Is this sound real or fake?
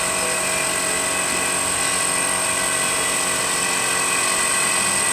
real